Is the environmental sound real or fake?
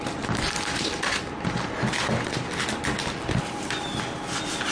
real